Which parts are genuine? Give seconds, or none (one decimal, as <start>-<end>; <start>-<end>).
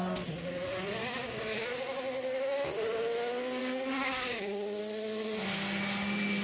0.0-1.0; 1.6-3.6; 4.8-6.4